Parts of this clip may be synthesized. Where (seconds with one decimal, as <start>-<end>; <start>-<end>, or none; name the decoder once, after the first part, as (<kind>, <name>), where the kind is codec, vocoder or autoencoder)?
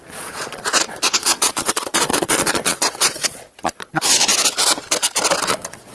0.0-4.3 (vocoder, Vocos); 5.5-5.9